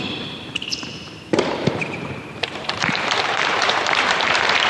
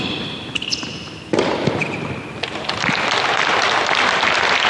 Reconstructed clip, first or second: first